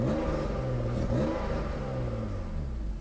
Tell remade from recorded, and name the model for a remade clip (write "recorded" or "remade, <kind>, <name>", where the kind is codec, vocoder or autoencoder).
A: recorded